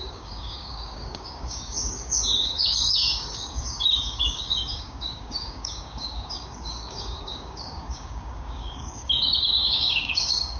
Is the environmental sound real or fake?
fake